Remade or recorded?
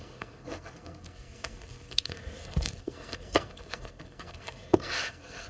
remade